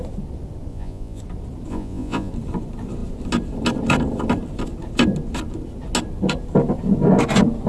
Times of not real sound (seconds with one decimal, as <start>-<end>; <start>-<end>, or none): 0.7-1.2; 1.7-2.3